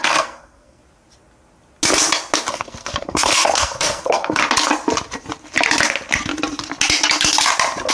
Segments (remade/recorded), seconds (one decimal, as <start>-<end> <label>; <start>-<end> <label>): 0.0-0.8 remade; 0.8-2.5 recorded; 2.5-4.4 remade; 4.4-7.9 recorded